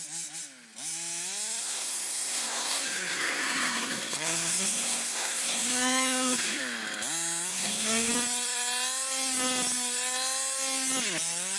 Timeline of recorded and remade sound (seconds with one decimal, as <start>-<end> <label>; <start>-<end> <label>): 0.0-1.6 recorded; 1.6-6.6 remade; 6.6-7.5 recorded; 7.5-8.1 remade; 8.1-11.6 recorded